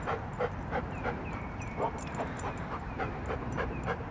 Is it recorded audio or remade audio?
remade